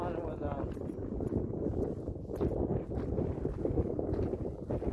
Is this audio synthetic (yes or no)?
no